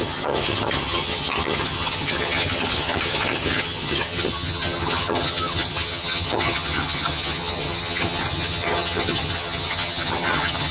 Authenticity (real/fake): fake